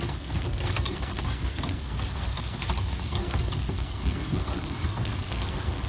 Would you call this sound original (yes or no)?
no